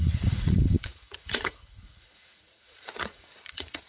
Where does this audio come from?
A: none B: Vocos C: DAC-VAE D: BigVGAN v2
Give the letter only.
B